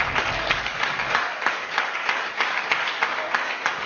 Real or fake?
fake